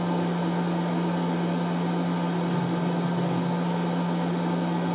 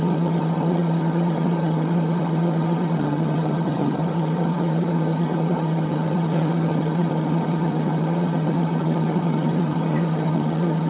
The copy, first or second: second